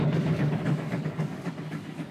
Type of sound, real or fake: fake